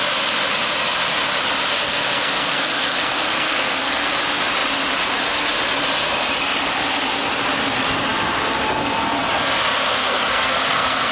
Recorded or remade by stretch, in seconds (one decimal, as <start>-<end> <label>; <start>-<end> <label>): 0.0-1.8 recorded; 1.8-4.1 remade; 4.1-10.0 recorded; 10.0-11.1 remade